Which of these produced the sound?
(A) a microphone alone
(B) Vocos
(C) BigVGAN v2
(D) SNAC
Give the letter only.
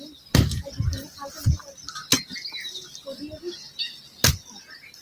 A